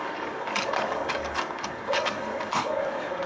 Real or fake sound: fake